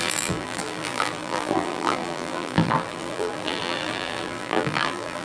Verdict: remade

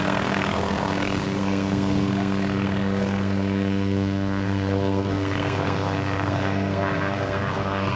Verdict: remade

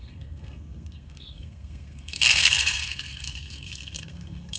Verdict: remade